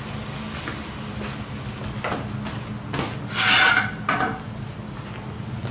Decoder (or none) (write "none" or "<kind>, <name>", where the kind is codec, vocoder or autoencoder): none